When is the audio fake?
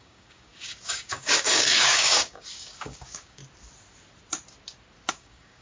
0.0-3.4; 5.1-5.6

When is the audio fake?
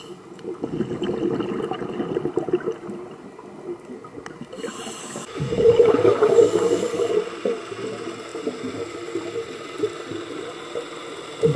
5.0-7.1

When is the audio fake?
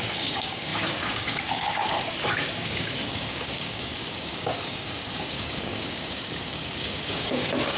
0.0-7.8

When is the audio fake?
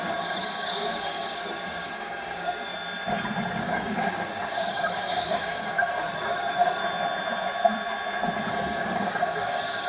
0.0-2.7; 3.6-6.8; 8.5-9.9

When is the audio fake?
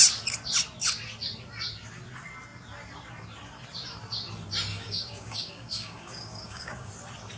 4.7-6.9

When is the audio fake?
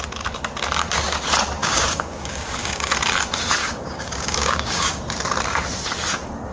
1.6-2.9; 3.6-5.0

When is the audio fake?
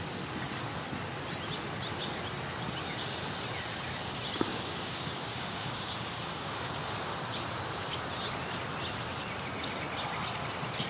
4.5-6.7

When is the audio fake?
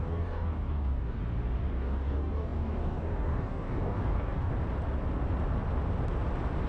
0.0-1.2; 1.7-4.5